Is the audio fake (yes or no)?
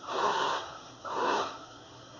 yes